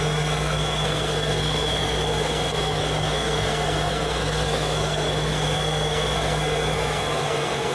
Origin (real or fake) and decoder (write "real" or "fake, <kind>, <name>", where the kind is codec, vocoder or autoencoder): fake, codec, SNAC